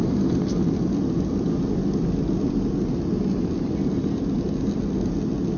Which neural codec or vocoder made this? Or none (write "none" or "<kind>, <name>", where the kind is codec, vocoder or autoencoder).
none